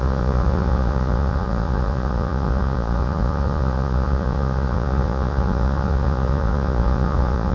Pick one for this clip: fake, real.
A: fake